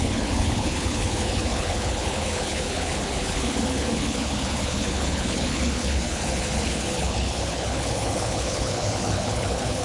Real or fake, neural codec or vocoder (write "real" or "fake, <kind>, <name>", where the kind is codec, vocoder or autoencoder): fake, codec, HILCodec